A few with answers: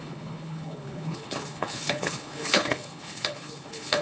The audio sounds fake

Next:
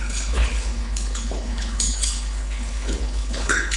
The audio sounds fake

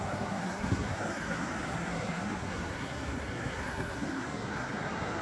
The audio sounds fake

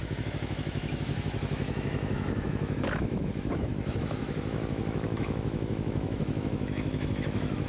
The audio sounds fake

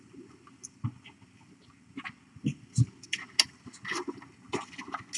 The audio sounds real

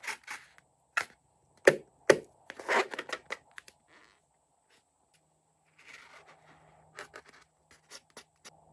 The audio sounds real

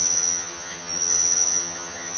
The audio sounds fake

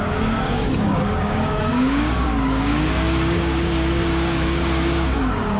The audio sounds fake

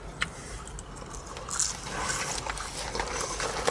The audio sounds real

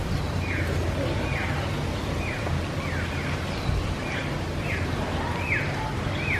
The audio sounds real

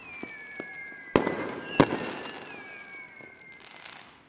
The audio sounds real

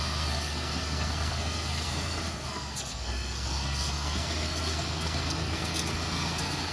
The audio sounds fake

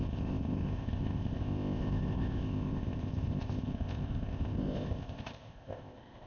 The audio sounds fake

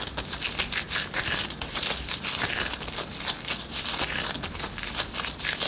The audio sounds real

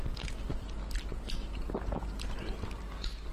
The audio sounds real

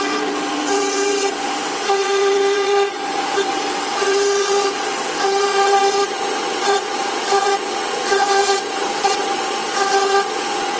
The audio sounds fake